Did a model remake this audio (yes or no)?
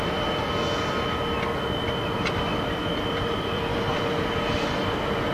no